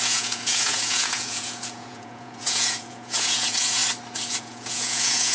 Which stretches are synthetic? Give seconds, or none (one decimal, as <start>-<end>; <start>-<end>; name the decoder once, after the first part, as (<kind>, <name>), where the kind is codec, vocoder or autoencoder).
0.0-3.8 (vocoder, Vocos); 4.3-5.3

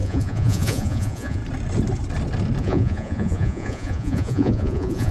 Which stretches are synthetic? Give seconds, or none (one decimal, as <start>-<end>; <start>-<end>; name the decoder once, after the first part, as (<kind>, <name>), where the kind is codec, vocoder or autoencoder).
0.0-1.4 (vocoder, Vocos); 2.6-5.1

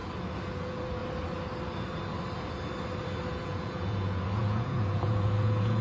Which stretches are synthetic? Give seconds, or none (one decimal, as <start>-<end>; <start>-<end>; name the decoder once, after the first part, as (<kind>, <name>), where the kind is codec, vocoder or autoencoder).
0.5-1.0 (vocoder, Vocos); 3.3-5.8

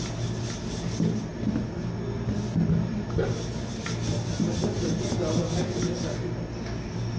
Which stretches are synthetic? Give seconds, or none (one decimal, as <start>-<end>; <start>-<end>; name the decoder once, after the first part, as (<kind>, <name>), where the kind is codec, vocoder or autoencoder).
none

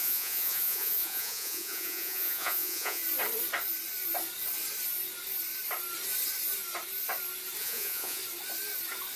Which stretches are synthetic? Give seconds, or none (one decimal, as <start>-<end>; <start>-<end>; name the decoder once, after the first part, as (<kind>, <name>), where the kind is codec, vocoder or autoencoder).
0.0-3.0 (vocoder, Vocos); 7.6-8.2

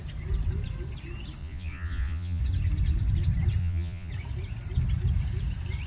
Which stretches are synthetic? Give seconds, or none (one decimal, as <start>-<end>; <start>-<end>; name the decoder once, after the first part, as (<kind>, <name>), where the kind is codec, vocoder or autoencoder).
1.4-2.4 (vocoder, Vocos); 3.6-4.1

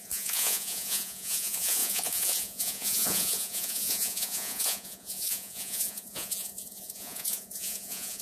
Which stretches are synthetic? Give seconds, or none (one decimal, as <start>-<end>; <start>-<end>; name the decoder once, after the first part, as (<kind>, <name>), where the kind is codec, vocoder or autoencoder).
0.0-8.2 (vocoder, Vocos)

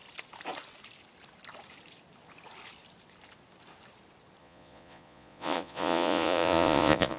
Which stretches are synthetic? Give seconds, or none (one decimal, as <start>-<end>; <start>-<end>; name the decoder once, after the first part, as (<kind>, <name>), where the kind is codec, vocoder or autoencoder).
4.4-7.2 (vocoder, Vocos)